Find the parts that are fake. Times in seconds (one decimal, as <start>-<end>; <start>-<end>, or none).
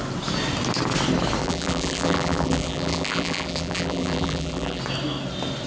1.4-4.8